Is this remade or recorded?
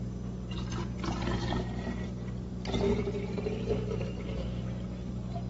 recorded